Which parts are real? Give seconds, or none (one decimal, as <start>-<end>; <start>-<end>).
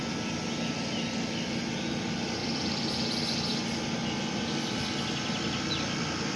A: 0.0-2.4; 3.3-6.4